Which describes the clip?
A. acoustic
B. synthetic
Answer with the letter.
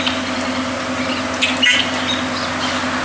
A